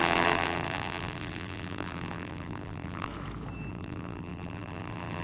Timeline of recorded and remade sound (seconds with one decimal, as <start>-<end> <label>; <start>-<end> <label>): 0.0-3.1 remade; 3.1-3.7 recorded; 3.7-5.2 remade

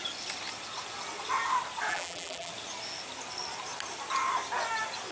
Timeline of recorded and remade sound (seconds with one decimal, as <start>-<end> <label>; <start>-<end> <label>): 0.0-1.9 recorded; 1.9-2.5 remade; 2.5-5.1 recorded